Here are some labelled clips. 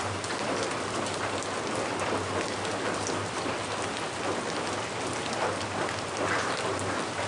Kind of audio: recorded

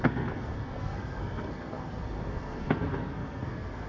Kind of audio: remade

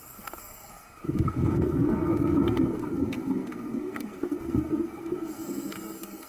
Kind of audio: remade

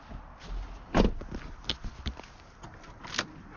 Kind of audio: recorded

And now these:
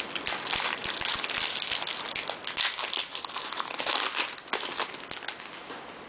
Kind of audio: recorded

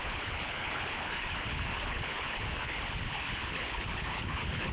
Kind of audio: remade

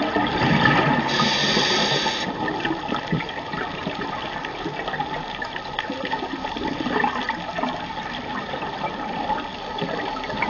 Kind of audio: recorded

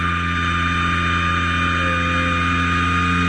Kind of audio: recorded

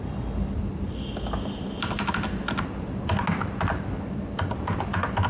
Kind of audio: recorded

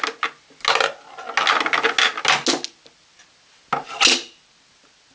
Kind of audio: recorded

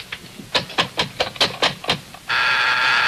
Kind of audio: recorded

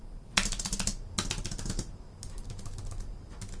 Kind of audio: recorded